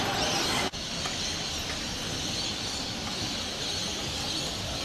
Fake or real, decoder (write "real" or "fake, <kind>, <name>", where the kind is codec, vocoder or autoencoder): real